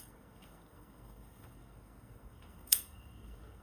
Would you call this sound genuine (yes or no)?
no